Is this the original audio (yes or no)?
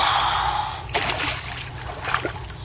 yes